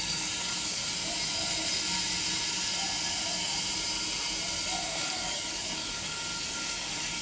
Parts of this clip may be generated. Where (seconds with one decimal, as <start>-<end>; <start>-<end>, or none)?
0.0-0.8; 5.0-7.2